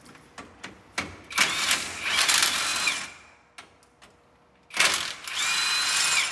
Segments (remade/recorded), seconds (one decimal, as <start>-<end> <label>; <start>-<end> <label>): 0.0-6.3 recorded